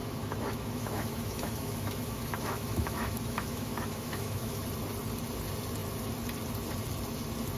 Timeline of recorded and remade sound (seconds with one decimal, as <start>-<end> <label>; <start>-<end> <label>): 0.0-4.6 remade; 4.6-7.6 recorded